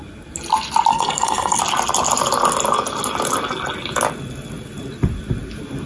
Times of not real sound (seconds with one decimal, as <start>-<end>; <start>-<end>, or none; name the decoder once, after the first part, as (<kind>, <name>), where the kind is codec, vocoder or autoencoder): 0.9-1.6 (codec, SNAC)